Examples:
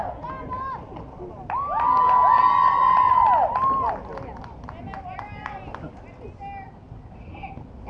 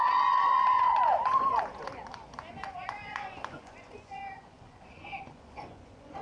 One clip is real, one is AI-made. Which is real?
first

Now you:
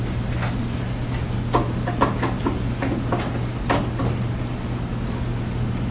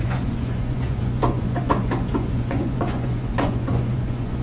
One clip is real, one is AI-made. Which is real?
first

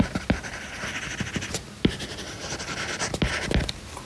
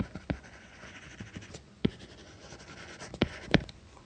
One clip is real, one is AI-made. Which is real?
first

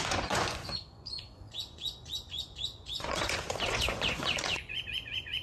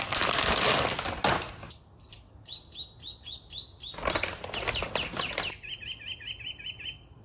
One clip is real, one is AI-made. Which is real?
second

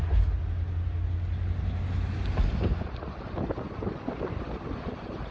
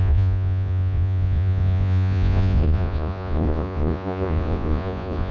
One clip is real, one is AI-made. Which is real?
first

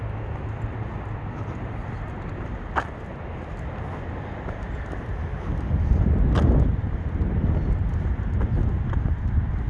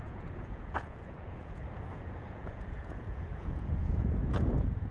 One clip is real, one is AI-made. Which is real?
first